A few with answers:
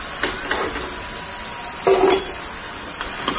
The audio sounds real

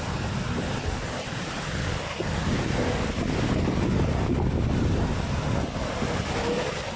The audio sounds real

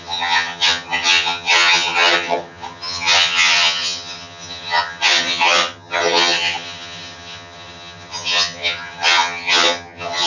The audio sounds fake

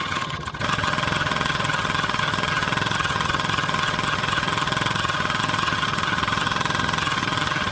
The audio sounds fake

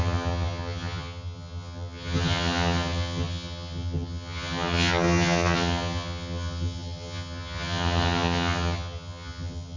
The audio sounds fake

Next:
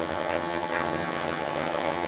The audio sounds fake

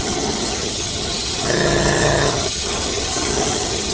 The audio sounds fake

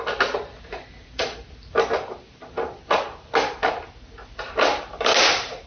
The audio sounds real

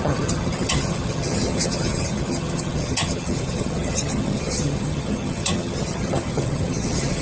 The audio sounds fake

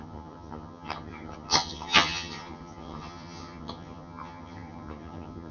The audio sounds fake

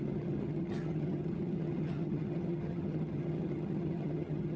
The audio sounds fake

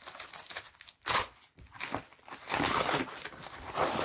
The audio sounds real